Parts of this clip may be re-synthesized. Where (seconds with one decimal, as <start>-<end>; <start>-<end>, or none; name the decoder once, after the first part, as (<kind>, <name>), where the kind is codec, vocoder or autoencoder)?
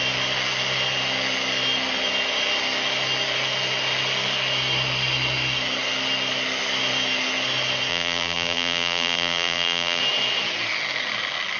7.9-10.0 (vocoder, BigVGAN v2)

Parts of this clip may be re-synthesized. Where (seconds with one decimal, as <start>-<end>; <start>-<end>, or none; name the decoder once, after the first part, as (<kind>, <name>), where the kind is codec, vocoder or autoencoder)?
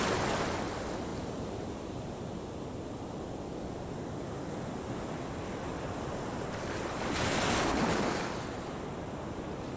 1.1-2.9 (vocoder, BigVGAN v2)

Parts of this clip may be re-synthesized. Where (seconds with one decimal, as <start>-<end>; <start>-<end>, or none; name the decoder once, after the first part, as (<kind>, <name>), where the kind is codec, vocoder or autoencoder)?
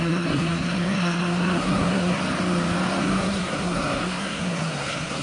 0.0-2.2 (codec, SNAC); 3.0-5.2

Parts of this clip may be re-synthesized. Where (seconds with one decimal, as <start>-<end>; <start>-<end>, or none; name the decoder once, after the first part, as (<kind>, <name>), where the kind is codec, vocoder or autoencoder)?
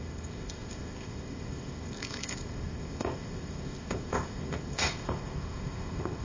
0.0-6.2 (codec, ZipCodec)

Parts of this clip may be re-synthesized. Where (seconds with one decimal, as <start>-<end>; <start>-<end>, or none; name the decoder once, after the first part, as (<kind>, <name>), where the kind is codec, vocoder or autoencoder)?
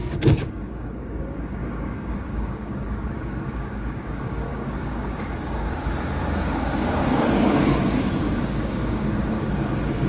0.0-10.1 (codec, DAC)